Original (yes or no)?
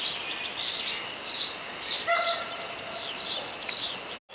yes